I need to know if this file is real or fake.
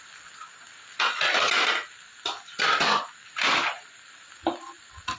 real